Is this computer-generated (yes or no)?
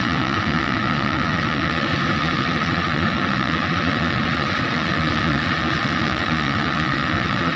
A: yes